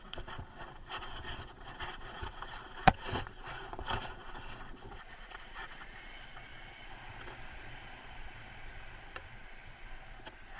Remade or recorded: remade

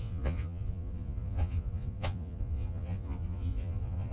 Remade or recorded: remade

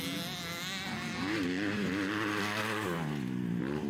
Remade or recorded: recorded